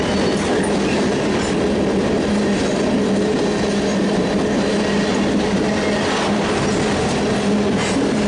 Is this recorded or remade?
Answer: recorded